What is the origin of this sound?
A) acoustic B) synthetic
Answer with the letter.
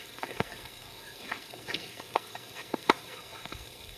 B